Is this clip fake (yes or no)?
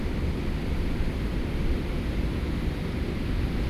yes